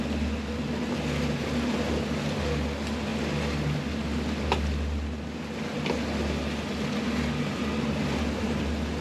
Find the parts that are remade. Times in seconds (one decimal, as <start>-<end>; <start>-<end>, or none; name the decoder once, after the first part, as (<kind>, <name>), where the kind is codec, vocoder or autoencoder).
none